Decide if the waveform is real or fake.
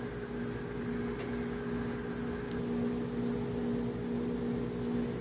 real